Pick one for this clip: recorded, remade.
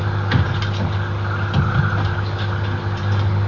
recorded